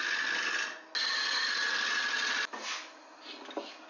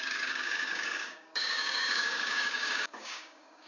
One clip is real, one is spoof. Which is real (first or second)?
first